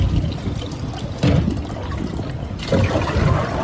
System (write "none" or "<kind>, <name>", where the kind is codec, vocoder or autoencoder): none